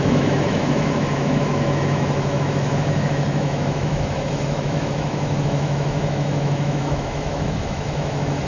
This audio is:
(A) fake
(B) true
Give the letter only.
A